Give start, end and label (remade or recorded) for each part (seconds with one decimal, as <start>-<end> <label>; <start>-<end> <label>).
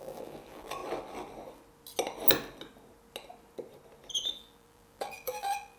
0.0-0.8 remade; 0.8-4.3 recorded; 4.3-5.8 remade